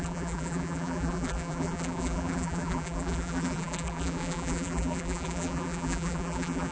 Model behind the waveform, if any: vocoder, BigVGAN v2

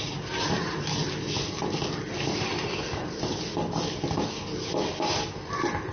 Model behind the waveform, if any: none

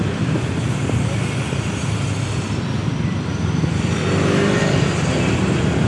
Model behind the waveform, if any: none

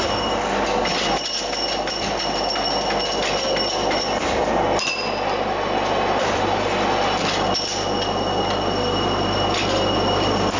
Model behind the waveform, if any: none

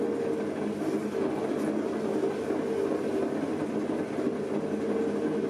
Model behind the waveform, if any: none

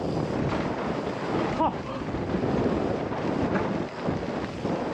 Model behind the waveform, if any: none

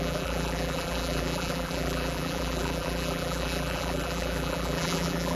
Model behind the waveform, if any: vocoder, BigVGAN v2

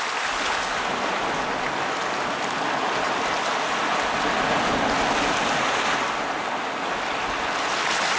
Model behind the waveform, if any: none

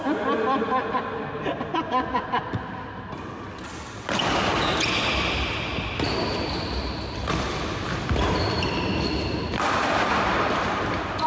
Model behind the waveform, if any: none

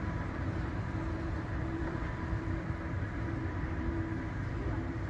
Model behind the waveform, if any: vocoder, BigVGAN v2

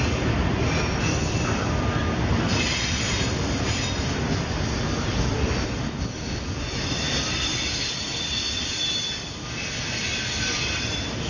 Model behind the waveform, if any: none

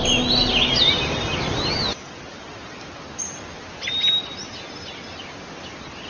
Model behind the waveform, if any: none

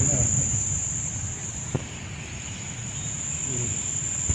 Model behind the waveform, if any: vocoder, BigVGAN v2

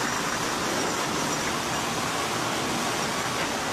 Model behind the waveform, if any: none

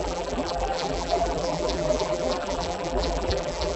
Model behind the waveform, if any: vocoder, BigVGAN v2